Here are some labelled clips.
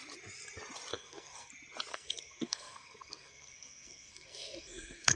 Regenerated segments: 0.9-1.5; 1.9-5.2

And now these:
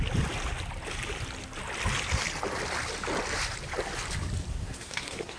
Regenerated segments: 4.5-5.4

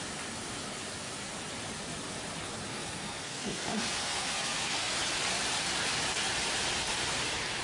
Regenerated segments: 2.7-4.9

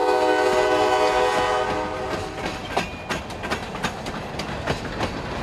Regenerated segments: none

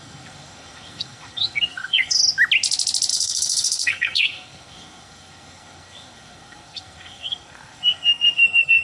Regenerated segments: 0.0-2.2; 3.1-8.8